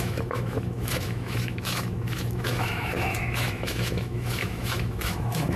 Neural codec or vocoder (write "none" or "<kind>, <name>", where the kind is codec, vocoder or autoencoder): autoencoder, DAC-VAE